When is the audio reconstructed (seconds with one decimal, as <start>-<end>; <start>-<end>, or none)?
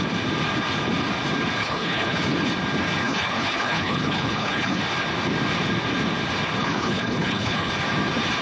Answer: 1.6-2.2; 3.0-4.8; 6.6-7.7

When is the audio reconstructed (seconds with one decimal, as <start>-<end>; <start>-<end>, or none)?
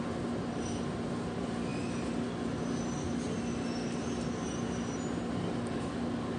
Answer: none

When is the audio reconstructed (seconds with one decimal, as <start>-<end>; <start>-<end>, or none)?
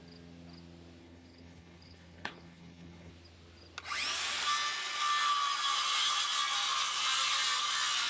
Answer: 1.0-3.1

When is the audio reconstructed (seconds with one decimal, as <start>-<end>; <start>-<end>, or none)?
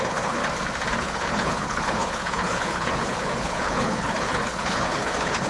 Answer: 0.0-0.4; 1.0-5.5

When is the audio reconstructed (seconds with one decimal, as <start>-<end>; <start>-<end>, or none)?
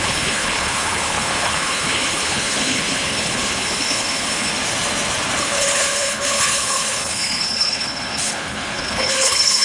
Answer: 0.0-4.5; 5.4-9.6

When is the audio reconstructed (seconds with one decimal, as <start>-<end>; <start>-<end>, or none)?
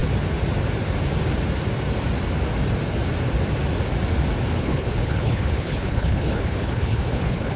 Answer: 4.6-7.6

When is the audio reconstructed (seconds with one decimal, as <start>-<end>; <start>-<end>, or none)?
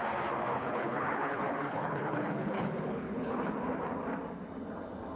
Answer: 0.5-3.6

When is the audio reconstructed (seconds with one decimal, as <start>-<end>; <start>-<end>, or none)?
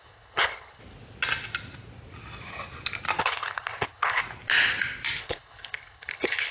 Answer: 0.0-0.8; 3.2-4.2; 5.2-6.5